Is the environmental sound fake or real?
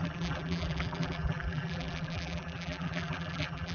fake